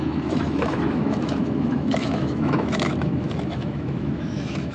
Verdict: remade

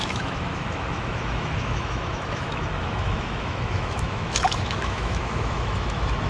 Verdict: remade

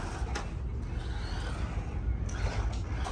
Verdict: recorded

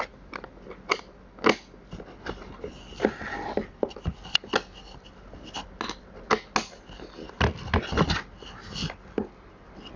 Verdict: recorded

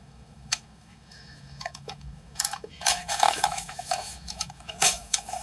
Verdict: remade